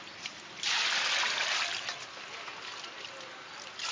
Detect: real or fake real